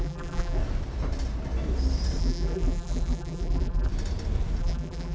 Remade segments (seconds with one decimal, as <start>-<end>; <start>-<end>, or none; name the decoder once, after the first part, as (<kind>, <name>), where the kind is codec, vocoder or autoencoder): 0.0-0.6 (vocoder, BigVGAN v2); 2.2-3.9; 4.6-5.1